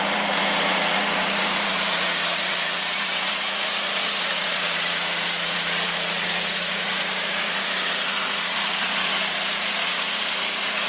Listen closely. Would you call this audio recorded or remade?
remade